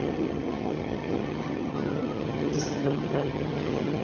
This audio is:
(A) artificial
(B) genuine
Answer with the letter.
A